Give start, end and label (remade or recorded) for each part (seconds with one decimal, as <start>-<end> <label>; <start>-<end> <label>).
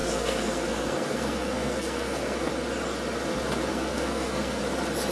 0.0-2.5 remade; 2.5-3.7 recorded; 3.7-4.6 remade; 4.6-5.1 recorded